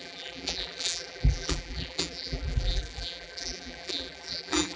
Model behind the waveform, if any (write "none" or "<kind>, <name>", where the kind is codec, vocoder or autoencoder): vocoder, BigVGAN v2